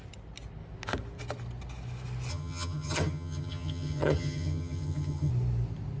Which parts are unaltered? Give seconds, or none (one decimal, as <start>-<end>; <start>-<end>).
0.0-2.3; 5.3-6.0